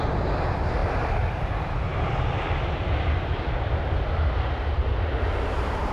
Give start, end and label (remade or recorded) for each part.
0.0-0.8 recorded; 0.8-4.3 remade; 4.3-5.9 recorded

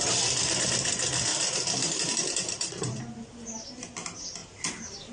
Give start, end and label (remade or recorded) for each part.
0.0-1.3 recorded; 1.3-3.0 remade; 3.0-4.4 recorded; 4.4-5.1 remade

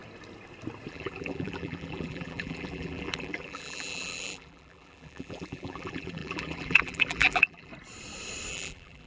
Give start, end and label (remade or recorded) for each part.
0.0-0.9 recorded; 0.9-7.7 remade; 7.7-8.5 recorded; 8.5-9.1 remade

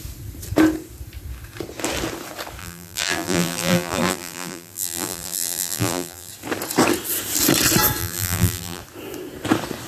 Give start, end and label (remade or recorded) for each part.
0.0-2.6 recorded; 2.6-6.3 remade; 6.3-8.0 recorded; 8.0-8.8 remade; 8.8-9.9 recorded